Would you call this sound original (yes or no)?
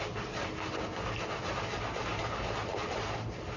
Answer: yes